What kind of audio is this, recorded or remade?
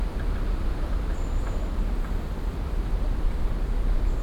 recorded